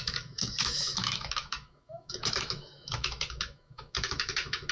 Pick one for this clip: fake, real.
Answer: fake